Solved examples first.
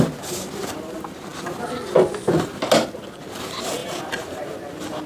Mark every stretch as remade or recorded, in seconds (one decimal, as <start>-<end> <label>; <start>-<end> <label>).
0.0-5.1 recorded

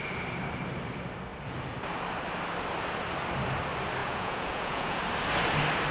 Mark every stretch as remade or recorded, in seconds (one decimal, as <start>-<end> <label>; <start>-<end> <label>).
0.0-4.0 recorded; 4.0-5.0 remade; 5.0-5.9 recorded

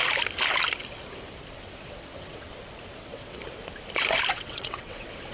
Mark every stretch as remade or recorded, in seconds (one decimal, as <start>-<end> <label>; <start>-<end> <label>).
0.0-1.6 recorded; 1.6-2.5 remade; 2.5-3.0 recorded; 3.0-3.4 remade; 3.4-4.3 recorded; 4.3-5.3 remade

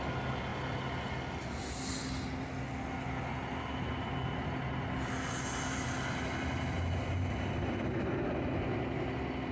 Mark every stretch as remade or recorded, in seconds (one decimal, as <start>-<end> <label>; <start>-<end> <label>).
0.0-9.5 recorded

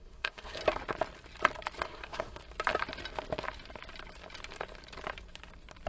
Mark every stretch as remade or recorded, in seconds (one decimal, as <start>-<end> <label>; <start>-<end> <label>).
0.0-0.6 remade; 0.6-1.8 recorded; 1.8-2.4 remade; 2.4-5.9 recorded

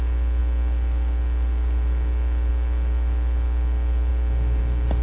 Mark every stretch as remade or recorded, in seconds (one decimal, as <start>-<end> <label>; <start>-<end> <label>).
0.0-5.0 recorded

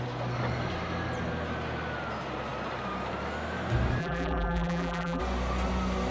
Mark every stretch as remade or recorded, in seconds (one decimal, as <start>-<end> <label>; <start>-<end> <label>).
0.0-4.0 recorded; 4.0-5.2 remade; 5.2-6.1 recorded